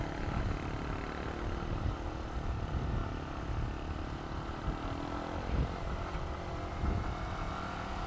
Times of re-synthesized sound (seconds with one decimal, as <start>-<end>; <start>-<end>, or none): none